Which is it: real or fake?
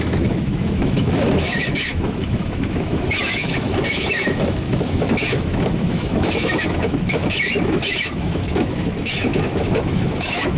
fake